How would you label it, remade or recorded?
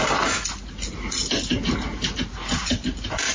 recorded